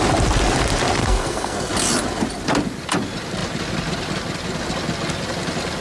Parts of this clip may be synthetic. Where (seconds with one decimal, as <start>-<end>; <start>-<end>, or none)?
1.0-1.7